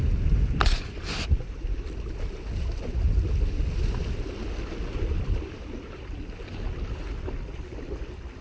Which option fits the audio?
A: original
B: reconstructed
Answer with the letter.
A